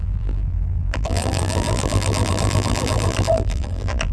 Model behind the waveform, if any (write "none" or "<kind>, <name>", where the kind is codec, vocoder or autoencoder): vocoder, BigVGAN v2